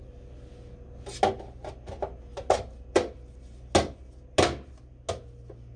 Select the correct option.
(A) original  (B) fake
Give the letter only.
A